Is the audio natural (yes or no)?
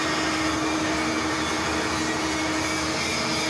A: yes